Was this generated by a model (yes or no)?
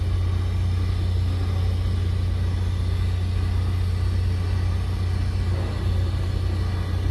no